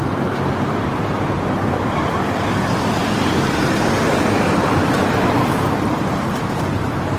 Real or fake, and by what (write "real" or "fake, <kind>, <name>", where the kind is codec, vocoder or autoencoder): fake, vocoder, BigVGAN v2